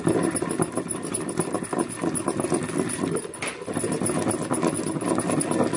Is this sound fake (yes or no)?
no